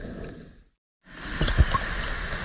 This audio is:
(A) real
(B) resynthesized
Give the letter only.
A